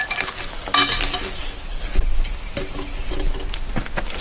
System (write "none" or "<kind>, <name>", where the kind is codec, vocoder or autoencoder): none